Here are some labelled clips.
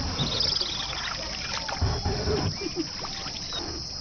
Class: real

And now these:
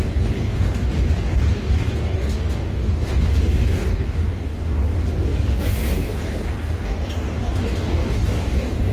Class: fake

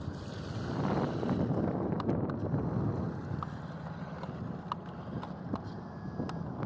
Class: real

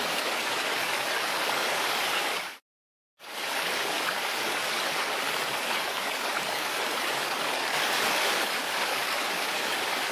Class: fake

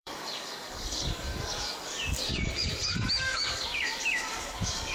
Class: fake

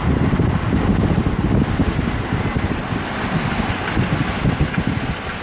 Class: real